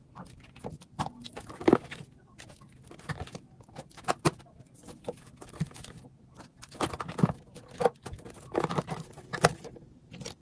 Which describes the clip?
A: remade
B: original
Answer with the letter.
B